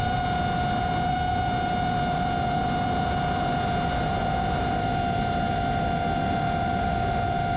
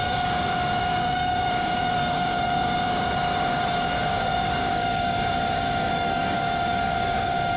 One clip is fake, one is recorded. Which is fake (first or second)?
second